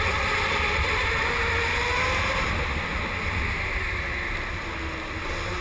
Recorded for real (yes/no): yes